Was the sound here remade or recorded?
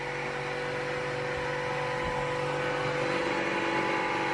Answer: recorded